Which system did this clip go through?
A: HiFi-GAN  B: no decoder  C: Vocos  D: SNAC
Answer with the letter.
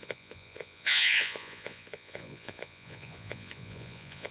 C